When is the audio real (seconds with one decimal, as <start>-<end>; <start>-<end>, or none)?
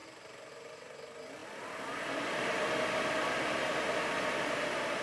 0.5-1.4; 3.7-5.0